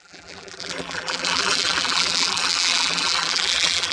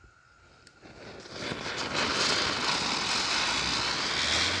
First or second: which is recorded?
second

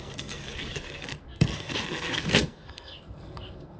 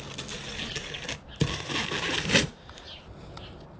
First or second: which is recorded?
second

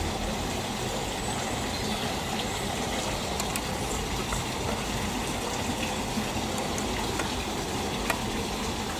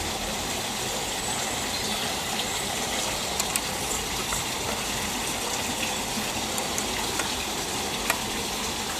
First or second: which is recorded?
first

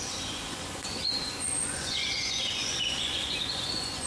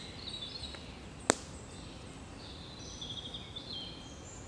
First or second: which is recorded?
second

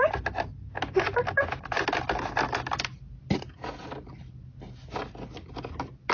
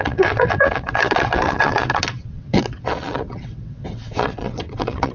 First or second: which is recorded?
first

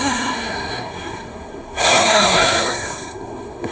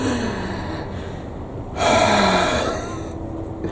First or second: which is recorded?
second